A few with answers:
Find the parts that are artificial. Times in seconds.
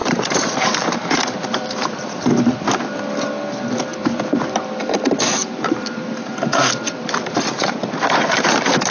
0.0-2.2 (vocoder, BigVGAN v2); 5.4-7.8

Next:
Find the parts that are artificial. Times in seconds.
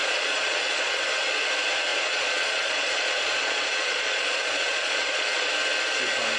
0.0-1.0 (vocoder, Vocos); 1.9-5.5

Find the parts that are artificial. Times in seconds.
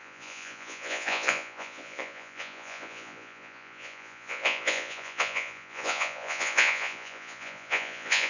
0.0-8.3 (vocoder, Vocos)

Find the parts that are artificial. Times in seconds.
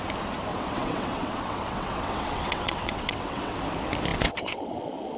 0.5-3.6 (vocoder, WaveNeXt); 4.1-4.8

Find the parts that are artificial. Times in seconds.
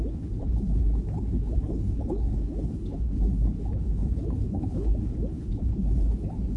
0.0-6.6 (codec, HILCodec)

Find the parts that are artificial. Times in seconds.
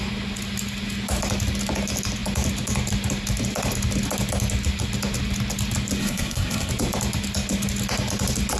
6.0-6.7 (codec, SNAC)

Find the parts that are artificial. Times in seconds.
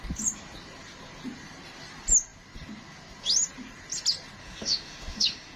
4.4-5.6 (autoencoder, DAC-VAE)